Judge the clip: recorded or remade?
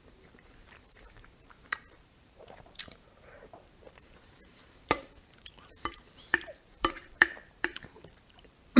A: remade